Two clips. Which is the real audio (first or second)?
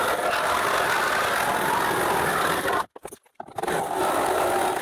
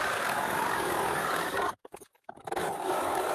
first